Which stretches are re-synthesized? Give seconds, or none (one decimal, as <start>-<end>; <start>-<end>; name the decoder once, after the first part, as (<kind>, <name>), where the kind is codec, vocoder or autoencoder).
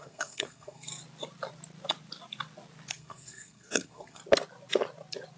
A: 0.0-0.9 (codec, SNAC); 2.9-4.2